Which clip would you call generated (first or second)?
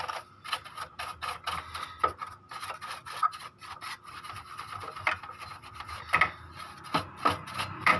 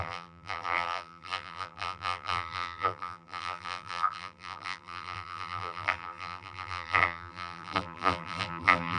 second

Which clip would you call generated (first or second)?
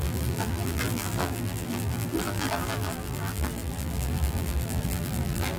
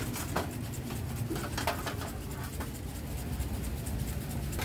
first